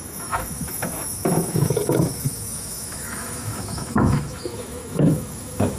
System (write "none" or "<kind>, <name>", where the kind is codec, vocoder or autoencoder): autoencoder, DAC-VAE